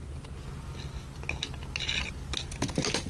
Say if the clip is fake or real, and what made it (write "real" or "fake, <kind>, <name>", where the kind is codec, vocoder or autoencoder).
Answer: real